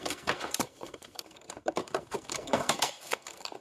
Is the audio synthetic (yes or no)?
yes